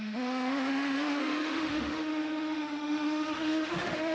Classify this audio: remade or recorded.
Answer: remade